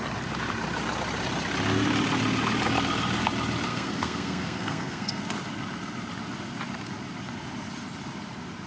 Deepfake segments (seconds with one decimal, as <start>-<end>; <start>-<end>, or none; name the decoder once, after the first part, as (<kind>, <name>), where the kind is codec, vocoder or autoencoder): 3.7-5.2 (codec, SNAC)